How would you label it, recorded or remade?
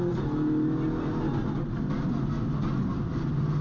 recorded